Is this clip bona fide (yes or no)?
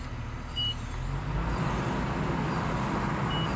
yes